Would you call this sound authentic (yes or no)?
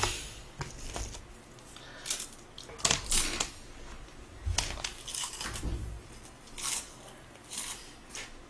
yes